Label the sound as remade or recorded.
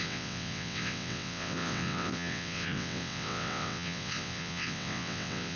remade